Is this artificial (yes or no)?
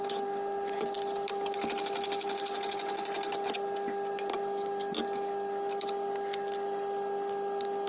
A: no